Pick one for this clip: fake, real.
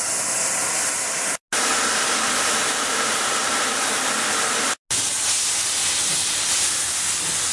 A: real